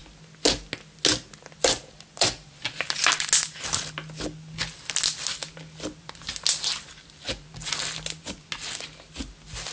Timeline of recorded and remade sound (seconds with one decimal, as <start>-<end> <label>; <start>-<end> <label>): 0.0-9.7 recorded